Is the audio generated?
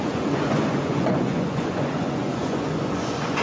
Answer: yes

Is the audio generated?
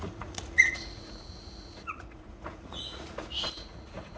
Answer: yes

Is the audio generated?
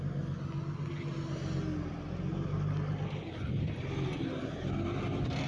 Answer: no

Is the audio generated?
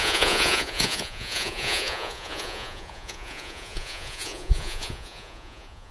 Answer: yes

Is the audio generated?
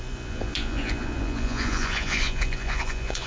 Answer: yes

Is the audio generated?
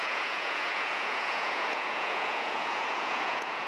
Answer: yes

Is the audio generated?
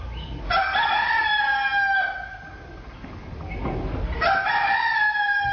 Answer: no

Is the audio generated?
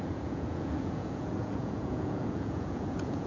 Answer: yes